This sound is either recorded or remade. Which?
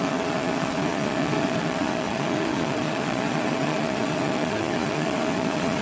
remade